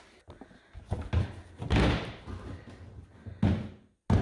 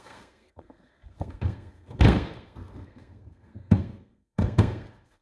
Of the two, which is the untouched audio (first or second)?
first